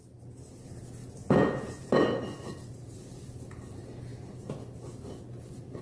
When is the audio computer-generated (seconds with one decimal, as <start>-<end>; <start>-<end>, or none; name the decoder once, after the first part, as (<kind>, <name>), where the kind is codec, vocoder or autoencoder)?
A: none